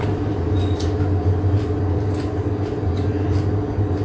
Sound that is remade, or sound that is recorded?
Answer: recorded